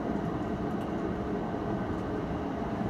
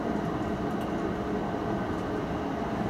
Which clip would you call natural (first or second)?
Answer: second